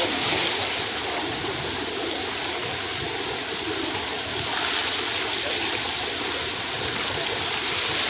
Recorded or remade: recorded